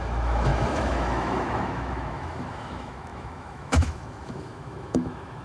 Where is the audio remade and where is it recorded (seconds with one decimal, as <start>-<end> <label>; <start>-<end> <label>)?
0.0-5.4 remade